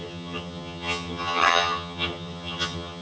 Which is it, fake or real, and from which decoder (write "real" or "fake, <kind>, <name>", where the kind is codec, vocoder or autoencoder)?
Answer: fake, vocoder, HiFi-GAN